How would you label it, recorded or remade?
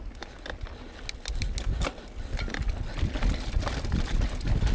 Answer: recorded